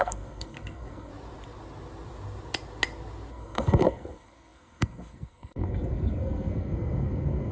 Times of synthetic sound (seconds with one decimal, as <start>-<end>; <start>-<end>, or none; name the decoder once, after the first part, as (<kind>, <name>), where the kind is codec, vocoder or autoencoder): 0.0-1.1 (codec, SNAC); 3.3-7.5